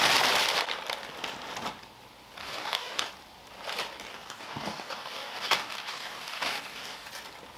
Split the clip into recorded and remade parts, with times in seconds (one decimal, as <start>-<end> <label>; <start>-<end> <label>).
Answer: 0.0-2.4 recorded; 2.4-3.1 remade; 3.1-4.1 recorded; 4.1-7.1 remade; 7.1-7.6 recorded